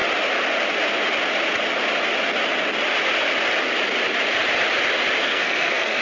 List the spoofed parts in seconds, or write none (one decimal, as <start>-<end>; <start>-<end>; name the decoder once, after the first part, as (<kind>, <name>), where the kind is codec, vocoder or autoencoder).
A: 5.2-6.0 (codec, SNAC)